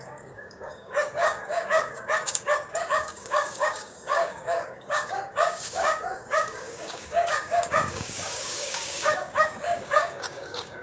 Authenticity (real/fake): fake